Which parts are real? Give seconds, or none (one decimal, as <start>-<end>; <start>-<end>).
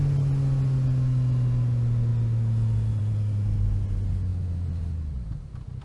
0.0-5.8